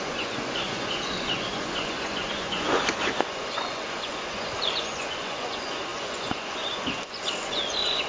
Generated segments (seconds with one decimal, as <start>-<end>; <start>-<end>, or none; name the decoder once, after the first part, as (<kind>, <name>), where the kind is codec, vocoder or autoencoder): 0.0-8.1 (vocoder, Vocos)